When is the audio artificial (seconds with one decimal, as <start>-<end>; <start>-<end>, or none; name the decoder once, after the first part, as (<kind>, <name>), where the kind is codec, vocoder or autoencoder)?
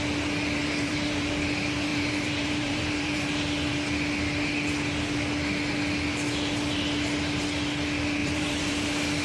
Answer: 0.6-1.3 (vocoder, BigVGAN v2); 1.9-3.3; 8.2-8.7